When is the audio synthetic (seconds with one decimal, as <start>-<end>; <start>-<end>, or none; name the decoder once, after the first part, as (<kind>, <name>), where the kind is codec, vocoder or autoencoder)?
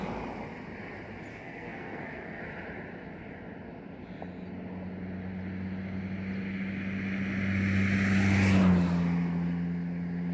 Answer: 1.3-2.4 (codec, SNAC)